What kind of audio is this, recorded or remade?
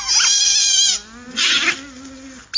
recorded